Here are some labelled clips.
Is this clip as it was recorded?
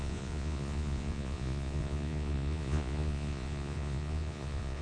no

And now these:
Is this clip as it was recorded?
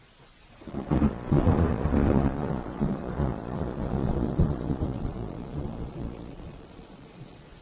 no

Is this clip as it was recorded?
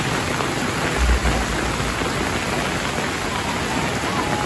yes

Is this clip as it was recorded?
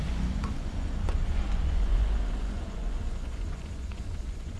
no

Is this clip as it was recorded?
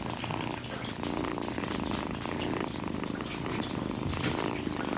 yes